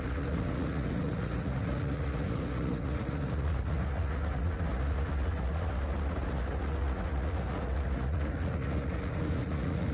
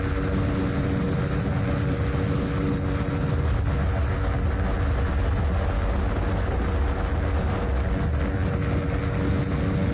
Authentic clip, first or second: second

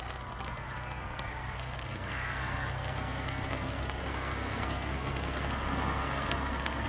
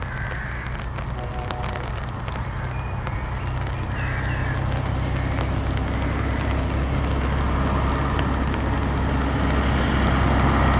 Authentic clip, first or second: second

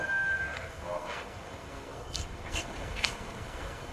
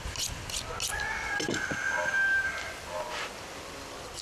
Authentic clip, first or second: second